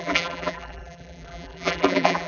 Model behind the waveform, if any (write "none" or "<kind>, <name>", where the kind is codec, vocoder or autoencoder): vocoder, BigVGAN v2